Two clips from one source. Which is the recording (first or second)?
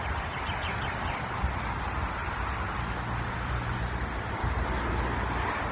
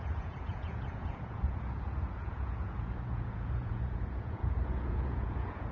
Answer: first